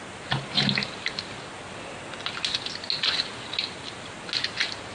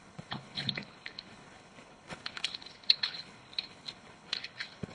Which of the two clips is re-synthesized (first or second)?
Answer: second